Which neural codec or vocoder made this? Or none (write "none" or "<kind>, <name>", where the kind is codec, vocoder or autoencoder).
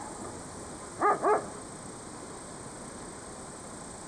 none